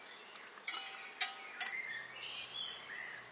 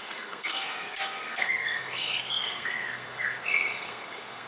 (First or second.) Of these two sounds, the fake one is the second